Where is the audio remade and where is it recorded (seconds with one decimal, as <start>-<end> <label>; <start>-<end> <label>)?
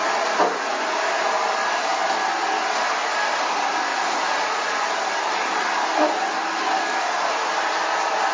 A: 0.0-3.9 recorded; 3.9-4.9 remade; 4.9-8.3 recorded